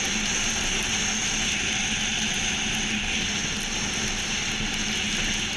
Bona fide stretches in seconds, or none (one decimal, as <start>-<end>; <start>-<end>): 0.0-5.6